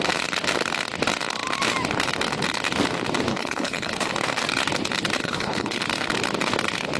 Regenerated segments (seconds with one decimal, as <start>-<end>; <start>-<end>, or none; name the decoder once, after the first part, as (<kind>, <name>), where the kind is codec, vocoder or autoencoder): 3.3-4.1 (codec, HILCodec); 5.2-5.8